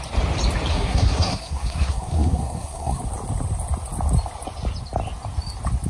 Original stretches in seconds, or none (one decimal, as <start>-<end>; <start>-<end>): 0.0-0.7; 3.0-5.9